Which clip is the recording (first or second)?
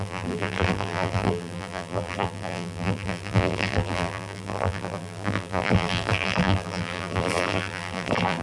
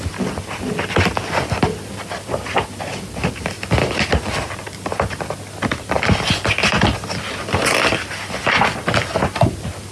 second